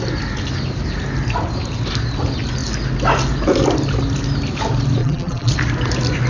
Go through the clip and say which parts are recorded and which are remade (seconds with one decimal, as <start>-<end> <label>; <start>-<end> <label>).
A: 0.0-5.0 recorded; 5.0-5.5 remade; 5.5-6.3 recorded